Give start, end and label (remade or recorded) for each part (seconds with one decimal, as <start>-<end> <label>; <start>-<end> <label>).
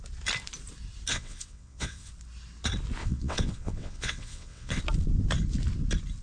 0.0-1.1 recorded; 1.1-2.1 remade; 2.1-3.0 recorded; 3.0-4.8 remade; 4.8-6.2 recorded